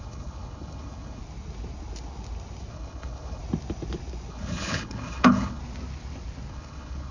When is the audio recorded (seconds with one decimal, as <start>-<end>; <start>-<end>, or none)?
1.2-2.7; 3.4-4.3; 5.6-6.5